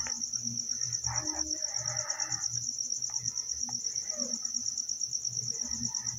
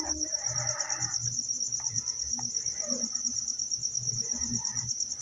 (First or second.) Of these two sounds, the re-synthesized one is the second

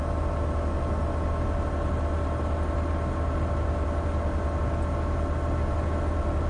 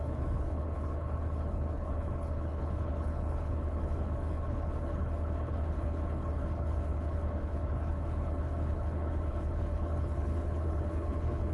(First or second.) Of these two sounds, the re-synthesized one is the second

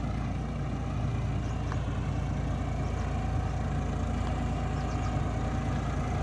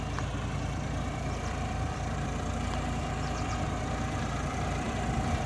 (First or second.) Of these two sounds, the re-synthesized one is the second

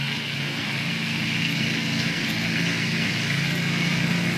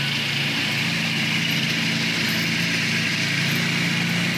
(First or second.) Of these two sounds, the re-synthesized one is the first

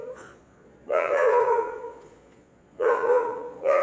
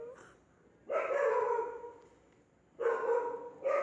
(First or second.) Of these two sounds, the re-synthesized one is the first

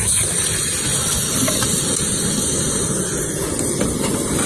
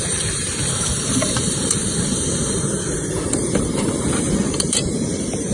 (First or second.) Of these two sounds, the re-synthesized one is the second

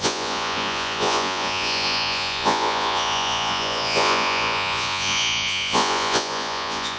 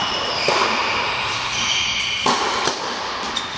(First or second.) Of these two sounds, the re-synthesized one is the first